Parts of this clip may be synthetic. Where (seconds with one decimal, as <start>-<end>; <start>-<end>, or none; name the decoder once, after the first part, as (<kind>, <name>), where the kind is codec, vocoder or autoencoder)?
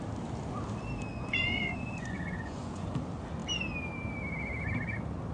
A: 1.1-2.9 (vocoder, Vocos)